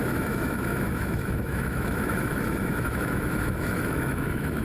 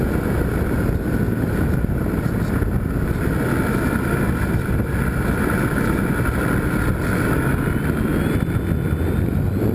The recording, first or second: second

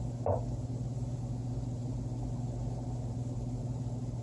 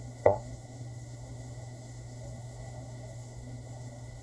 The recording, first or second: first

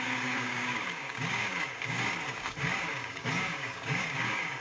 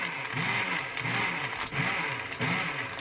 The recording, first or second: second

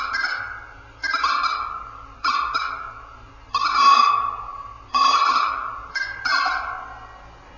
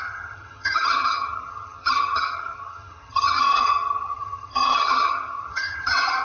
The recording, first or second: first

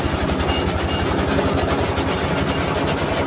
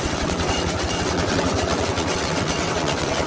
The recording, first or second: first